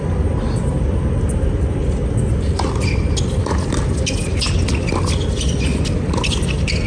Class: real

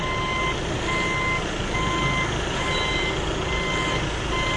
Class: real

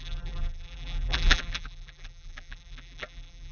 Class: fake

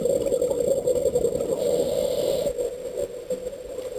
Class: real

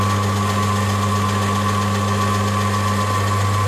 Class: real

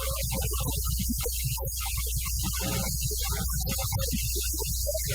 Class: real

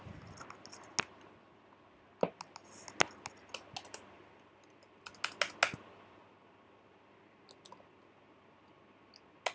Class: real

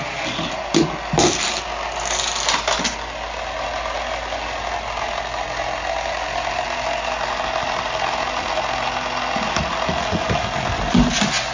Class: real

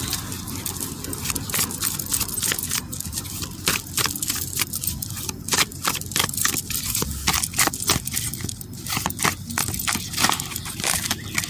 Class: real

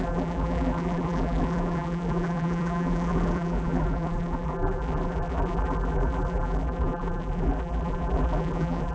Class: fake